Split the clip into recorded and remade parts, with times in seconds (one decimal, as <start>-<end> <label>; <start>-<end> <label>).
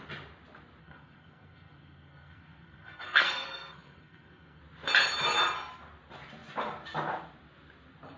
0.0-0.8 recorded; 0.8-4.6 remade; 4.6-8.2 recorded